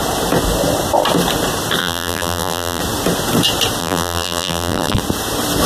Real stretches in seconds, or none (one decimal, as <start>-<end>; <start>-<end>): 0.0-1.8; 2.8-3.8; 5.0-5.7